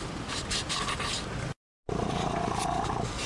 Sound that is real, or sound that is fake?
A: real